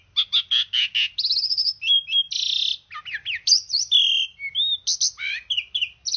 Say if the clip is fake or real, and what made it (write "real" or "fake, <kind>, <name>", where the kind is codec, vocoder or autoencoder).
real